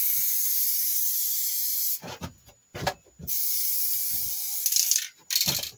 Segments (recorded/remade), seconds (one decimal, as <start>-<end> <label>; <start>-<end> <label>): 0.0-2.6 recorded; 2.6-4.6 remade; 4.6-5.8 recorded